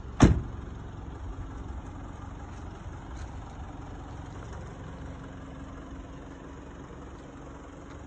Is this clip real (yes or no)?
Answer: yes